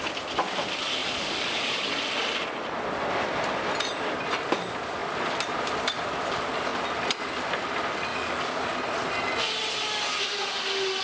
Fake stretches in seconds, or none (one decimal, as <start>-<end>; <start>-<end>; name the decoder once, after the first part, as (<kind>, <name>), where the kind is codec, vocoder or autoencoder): 1.0-1.9 (codec, DAC); 8.1-8.6